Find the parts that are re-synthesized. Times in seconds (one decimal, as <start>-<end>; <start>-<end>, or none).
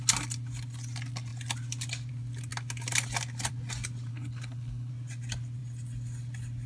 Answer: 4.1-4.9